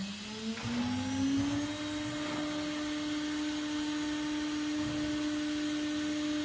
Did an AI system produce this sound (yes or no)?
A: no